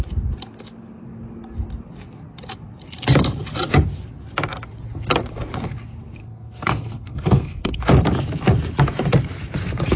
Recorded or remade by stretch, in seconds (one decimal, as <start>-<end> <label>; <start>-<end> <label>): 0.0-6.2 recorded; 6.2-7.7 remade; 7.7-10.0 recorded